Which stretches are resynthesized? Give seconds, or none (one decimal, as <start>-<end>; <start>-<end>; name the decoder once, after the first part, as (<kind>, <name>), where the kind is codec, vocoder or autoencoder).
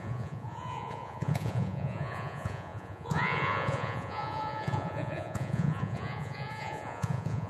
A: 0.0-7.5 (vocoder, Vocos)